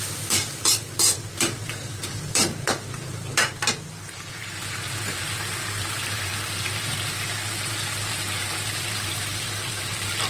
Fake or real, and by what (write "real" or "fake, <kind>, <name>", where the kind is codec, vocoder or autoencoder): fake, vocoder, BigVGAN v2